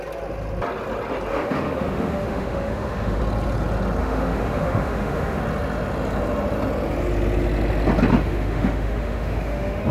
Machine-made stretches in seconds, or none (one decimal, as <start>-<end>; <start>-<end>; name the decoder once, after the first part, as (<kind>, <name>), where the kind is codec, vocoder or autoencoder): 1.3-3.2 (autoencoder, DAC-VAE); 4.0-5.4; 8.1-9.9